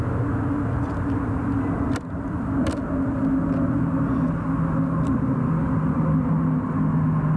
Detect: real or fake real